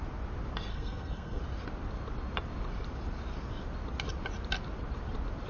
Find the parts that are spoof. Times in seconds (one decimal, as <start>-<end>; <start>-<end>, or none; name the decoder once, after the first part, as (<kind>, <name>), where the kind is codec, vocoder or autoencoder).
0.7-1.4 (codec, SNAC)